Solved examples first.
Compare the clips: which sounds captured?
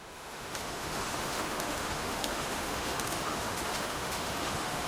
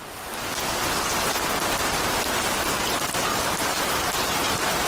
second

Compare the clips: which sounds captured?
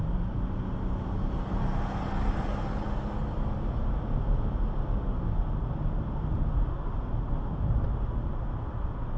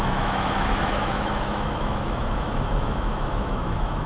first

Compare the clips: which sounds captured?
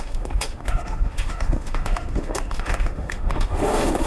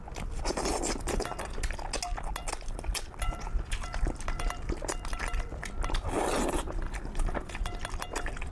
second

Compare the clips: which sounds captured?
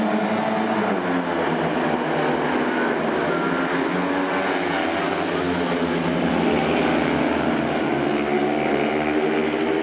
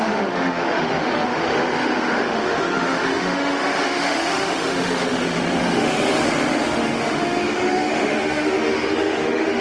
first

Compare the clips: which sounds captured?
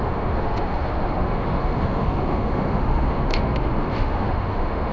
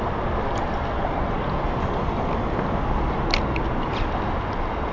second